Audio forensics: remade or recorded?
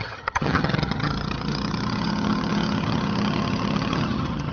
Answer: remade